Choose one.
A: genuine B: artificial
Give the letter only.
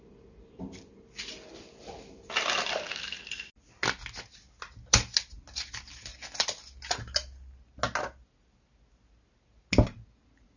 A